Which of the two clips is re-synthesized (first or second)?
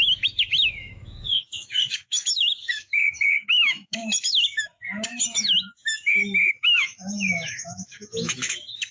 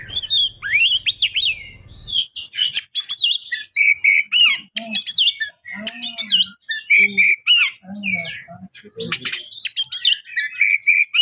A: first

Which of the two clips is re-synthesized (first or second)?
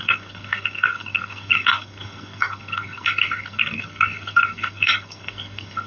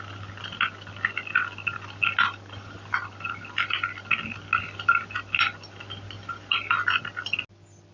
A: first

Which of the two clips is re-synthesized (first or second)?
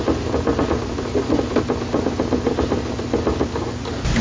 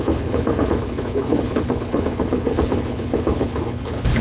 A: second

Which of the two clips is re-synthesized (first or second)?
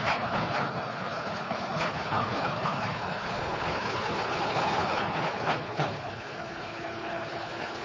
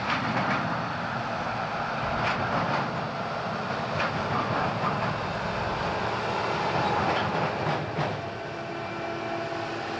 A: first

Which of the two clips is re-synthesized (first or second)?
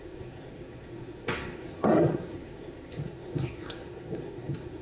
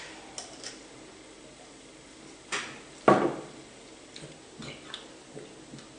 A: first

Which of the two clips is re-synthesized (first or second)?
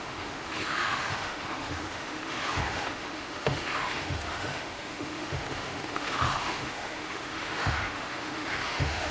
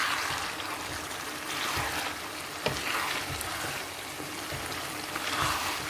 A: first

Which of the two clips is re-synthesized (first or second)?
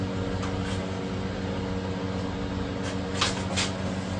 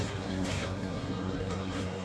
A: second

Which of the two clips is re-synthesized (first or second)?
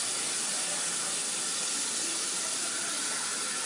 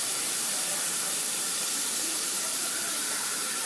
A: second